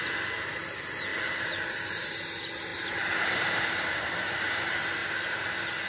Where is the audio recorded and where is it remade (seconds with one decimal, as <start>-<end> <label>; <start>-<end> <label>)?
0.0-1.1 recorded; 1.1-1.7 remade; 1.7-2.7 recorded; 2.7-4.0 remade; 4.0-5.0 recorded; 5.0-5.5 remade; 5.5-5.9 recorded